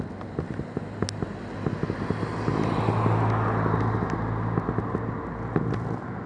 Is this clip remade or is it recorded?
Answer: recorded